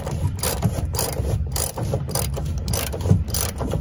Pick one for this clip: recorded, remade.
remade